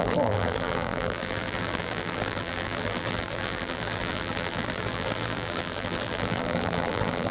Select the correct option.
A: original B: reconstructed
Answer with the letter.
B